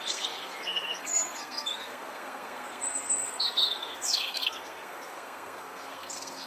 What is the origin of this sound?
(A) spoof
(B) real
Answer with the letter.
A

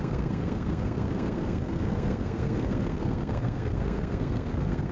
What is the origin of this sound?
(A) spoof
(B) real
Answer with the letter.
A